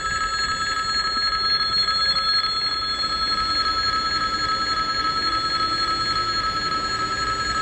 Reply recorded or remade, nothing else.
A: recorded